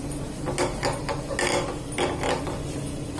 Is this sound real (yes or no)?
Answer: yes